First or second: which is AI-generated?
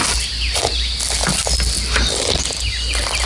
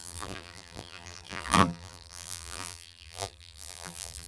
second